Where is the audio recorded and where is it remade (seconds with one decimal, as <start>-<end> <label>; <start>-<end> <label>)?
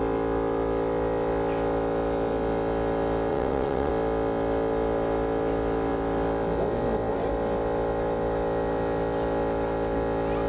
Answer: 0.0-3.3 recorded; 3.3-3.9 remade; 3.9-10.5 recorded